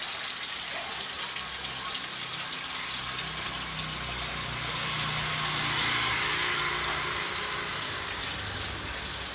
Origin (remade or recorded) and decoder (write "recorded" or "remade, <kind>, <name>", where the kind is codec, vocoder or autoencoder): recorded